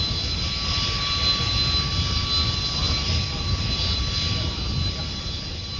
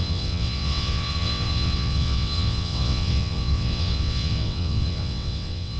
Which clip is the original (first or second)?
first